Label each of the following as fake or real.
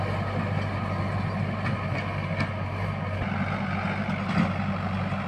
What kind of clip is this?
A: real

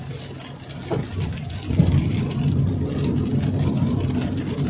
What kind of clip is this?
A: real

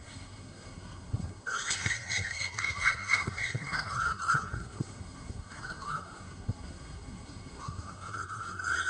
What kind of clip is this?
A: fake